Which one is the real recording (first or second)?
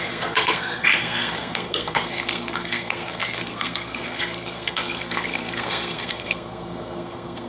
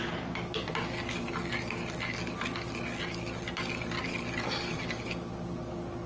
second